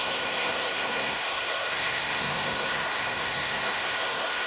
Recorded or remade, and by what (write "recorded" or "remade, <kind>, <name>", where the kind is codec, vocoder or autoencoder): remade, codec, SNAC